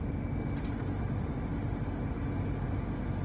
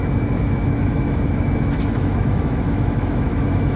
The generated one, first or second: second